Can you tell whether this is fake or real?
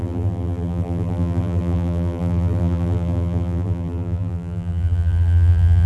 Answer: fake